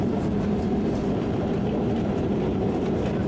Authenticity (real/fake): fake